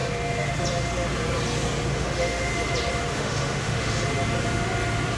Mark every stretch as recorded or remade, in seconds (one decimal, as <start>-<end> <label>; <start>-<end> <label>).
0.0-1.9 recorded; 1.9-2.5 remade; 2.5-3.1 recorded; 3.1-4.0 remade; 4.0-5.2 recorded